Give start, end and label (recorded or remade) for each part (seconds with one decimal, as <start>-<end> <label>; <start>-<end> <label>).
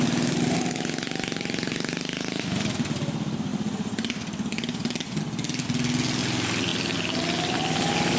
0.0-8.2 recorded